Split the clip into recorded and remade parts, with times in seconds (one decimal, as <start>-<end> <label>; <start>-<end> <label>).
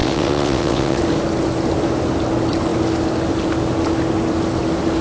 0.0-1.0 remade; 1.0-5.0 recorded